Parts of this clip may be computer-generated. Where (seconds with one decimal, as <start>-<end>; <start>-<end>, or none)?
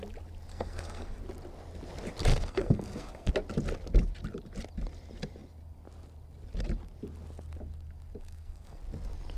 0.5-1.2; 2.3-3.3; 8.2-8.8